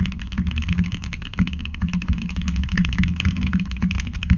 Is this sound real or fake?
fake